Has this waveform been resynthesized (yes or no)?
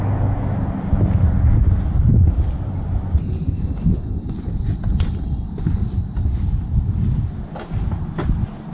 no